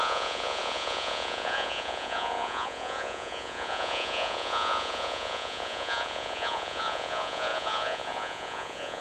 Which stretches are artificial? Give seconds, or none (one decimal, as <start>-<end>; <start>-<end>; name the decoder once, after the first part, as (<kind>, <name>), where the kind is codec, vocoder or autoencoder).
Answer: 0.0-9.0 (vocoder, Vocos)